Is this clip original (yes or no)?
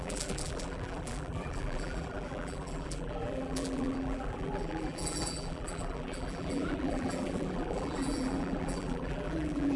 no